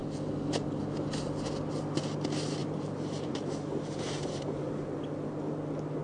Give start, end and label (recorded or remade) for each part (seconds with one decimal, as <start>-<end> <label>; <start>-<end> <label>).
0.0-2.6 recorded; 2.6-4.7 remade; 4.7-6.0 recorded